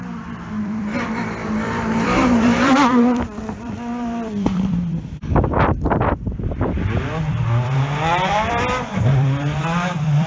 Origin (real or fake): fake